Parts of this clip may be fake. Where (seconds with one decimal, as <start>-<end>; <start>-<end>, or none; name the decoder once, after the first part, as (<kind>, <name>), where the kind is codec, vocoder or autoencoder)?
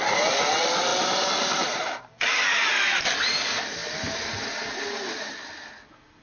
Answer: none